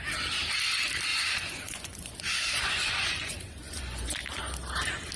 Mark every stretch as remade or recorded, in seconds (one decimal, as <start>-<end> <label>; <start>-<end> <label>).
0.0-1.1 recorded; 1.1-4.2 remade; 4.2-5.2 recorded